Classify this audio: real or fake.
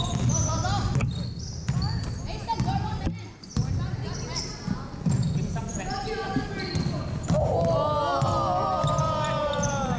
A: real